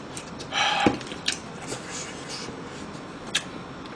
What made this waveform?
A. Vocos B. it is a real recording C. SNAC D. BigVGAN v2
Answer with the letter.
B